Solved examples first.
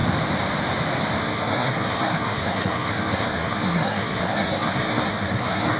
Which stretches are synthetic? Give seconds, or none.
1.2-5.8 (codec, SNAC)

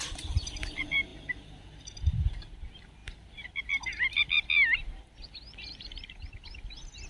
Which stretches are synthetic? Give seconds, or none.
none

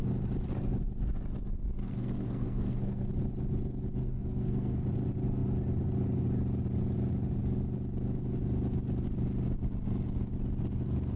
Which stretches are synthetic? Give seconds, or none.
1.8-3.1 (codec, SNAC); 4.0-4.8

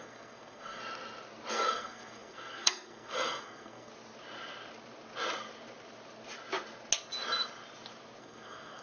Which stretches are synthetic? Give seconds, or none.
0.0-0.8 (codec, SNAC); 1.5-3.9; 8.2-8.8

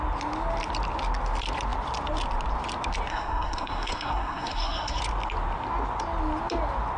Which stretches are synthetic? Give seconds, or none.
3.1-5.0 (codec, SNAC)

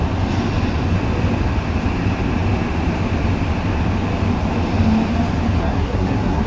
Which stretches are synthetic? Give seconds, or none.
5.6-6.5 (codec, SNAC)